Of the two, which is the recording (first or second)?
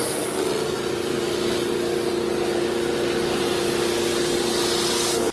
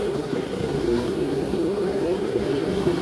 first